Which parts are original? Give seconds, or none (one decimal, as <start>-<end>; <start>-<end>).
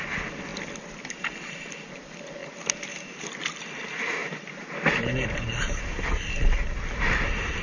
0.0-0.5; 1.2-4.2; 4.7-7.6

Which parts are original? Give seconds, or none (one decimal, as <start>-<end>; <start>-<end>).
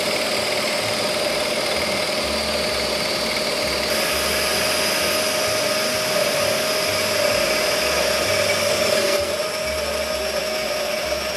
0.0-8.6; 9.3-11.4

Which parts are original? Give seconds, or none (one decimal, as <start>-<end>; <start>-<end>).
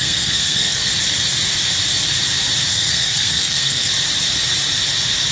0.9-2.7; 3.9-5.3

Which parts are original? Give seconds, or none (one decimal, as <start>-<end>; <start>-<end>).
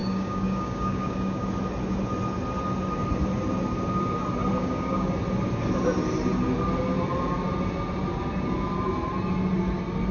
1.5-4.6; 5.1-10.1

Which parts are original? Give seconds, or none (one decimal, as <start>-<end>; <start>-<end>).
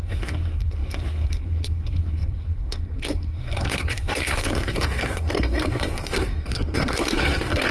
none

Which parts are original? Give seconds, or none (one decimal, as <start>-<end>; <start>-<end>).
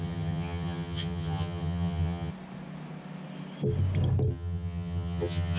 2.3-4.3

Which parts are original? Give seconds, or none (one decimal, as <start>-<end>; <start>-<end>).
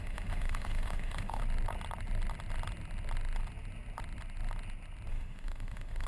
1.4-5.1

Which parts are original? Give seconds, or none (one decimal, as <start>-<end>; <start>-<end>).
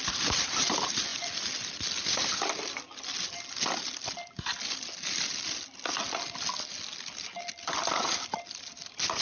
0.0-9.2